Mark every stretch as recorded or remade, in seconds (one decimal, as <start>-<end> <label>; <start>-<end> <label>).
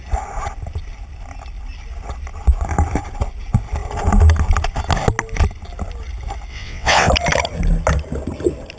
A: 0.0-6.5 recorded; 6.5-7.1 remade; 7.1-8.8 recorded